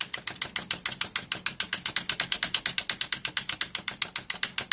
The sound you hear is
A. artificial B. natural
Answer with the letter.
B